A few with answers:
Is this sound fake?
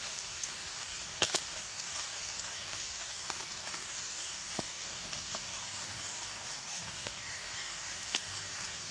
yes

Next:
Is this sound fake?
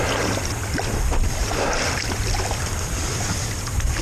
no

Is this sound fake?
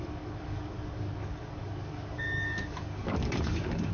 yes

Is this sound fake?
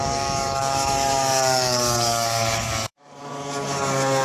yes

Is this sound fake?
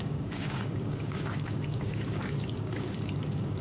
yes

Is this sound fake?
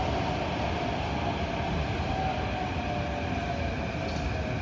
no